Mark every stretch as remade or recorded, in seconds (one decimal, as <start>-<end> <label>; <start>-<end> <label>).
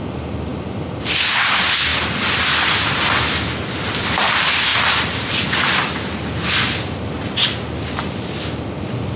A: 0.0-9.2 recorded